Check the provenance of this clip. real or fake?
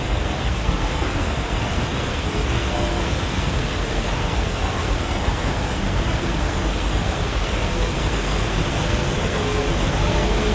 fake